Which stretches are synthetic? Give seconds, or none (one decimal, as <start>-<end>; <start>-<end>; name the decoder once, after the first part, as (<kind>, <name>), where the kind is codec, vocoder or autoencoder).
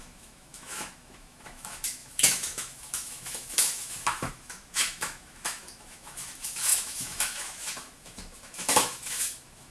0.0-9.7 (autoencoder, DAC-VAE)